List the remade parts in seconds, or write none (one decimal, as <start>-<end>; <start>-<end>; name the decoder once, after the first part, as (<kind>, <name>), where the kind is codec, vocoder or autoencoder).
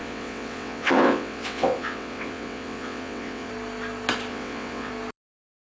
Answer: 0.0-3.5 (vocoder, WaveNeXt); 4.3-4.9